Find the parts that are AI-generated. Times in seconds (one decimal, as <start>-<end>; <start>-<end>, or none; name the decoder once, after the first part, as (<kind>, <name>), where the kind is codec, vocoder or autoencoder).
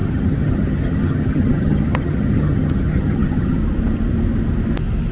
0.0-3.6 (vocoder, HiFi-GAN)